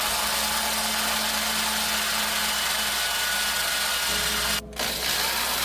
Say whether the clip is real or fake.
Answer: real